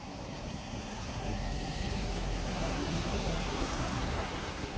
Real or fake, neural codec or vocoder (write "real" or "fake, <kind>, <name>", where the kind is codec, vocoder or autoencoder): fake, codec, SNAC